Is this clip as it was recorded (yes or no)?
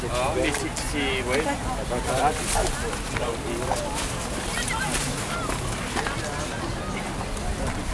yes